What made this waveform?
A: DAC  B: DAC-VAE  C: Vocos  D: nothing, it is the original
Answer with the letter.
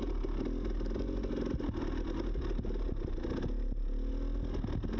D